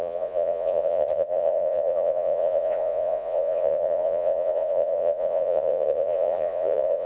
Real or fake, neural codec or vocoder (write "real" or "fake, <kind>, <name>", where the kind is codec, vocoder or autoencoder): fake, vocoder, Vocos